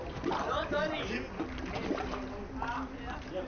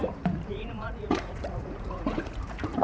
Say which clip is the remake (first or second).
second